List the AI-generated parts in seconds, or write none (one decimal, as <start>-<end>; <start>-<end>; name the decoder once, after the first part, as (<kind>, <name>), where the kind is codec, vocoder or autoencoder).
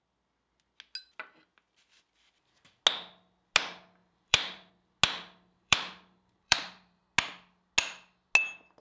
4.0-4.7 (vocoder, BigVGAN v2); 5.5-7.0